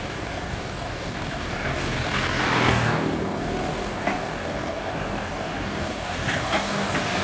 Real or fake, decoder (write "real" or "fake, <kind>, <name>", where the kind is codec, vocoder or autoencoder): fake, codec, DAC